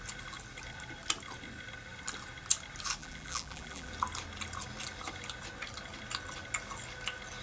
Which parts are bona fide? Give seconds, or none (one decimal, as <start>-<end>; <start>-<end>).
0.0-3.0; 3.9-7.4

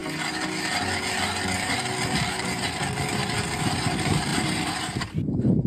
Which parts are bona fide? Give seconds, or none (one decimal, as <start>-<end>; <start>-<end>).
0.0-3.4

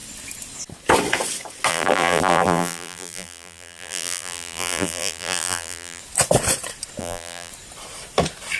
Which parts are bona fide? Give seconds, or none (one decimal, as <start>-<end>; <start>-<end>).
0.0-1.7; 6.0-7.0; 7.5-8.6

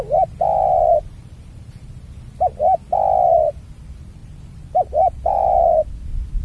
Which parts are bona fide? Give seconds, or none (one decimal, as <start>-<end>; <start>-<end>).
0.0-0.5; 2.2-4.2; 5.9-6.4

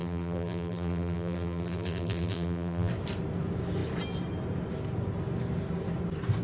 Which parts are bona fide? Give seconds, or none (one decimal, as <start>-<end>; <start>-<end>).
2.9-6.4

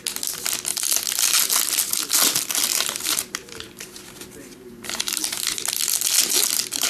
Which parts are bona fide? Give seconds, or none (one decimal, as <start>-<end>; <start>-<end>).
0.0-2.7; 5.0-6.9

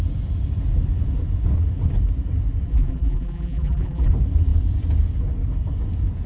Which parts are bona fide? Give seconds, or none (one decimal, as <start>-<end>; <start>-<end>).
0.0-2.7; 4.1-6.3